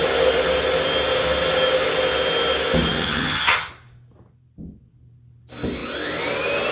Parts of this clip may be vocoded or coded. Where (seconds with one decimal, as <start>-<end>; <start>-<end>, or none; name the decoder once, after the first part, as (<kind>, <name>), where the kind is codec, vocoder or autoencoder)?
2.9-3.7 (vocoder, HiFi-GAN)